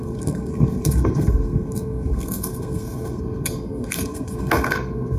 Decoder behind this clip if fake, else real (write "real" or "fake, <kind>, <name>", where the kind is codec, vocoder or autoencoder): fake, codec, SNAC